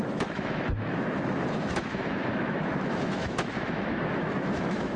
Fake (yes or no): yes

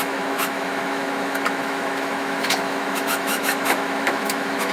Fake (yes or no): yes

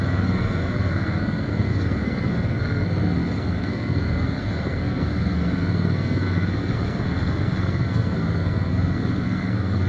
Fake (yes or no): yes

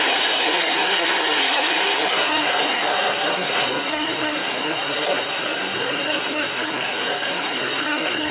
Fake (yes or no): yes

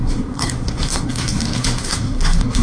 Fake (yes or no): yes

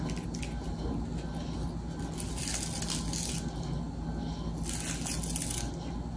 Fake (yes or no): no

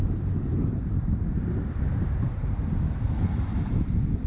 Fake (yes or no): yes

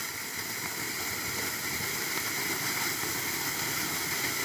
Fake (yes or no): no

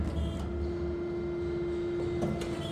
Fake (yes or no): no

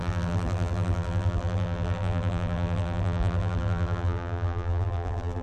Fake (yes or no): yes